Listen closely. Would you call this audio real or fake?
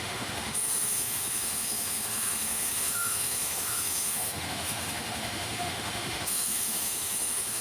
fake